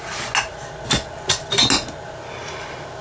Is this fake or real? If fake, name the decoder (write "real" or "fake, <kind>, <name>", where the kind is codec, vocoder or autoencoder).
real